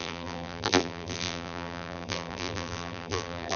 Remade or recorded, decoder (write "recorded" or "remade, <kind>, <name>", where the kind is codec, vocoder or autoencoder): remade, vocoder, BigVGAN v2